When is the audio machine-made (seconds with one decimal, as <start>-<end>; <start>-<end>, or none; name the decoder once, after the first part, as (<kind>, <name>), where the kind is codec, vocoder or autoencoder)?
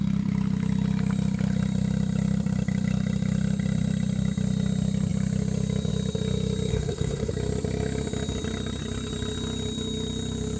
6.7-7.3 (codec, SNAC)